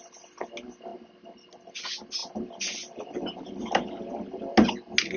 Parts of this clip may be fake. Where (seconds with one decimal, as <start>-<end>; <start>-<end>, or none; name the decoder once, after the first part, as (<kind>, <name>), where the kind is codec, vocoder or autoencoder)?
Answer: none